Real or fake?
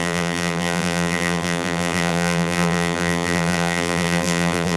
fake